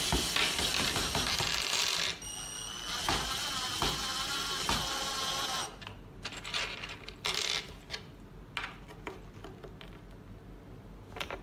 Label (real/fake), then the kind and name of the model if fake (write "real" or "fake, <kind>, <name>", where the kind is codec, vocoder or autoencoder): real